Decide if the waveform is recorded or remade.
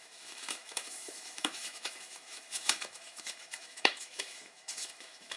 remade